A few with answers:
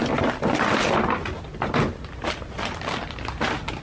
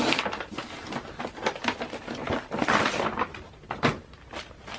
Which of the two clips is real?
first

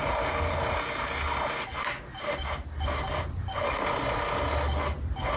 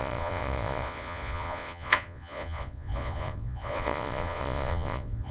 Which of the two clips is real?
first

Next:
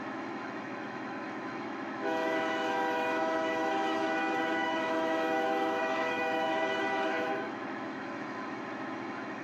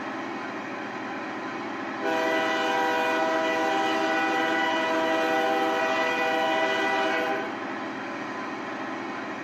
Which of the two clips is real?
second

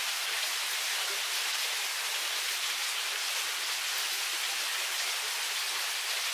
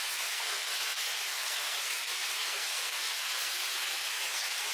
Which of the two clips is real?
first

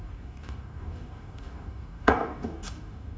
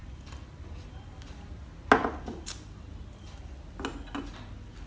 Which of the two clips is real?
second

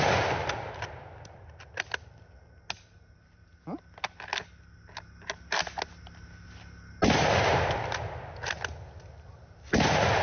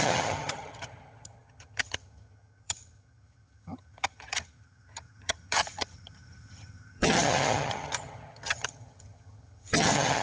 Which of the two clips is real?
first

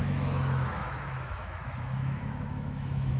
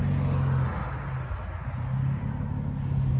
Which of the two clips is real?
second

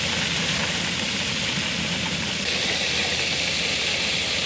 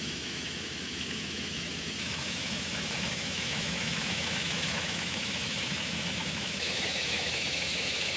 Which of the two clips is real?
first